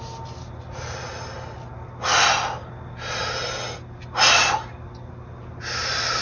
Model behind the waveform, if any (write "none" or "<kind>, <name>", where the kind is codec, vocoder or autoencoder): none